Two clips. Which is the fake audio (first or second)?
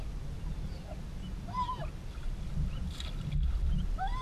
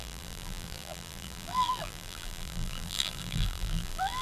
second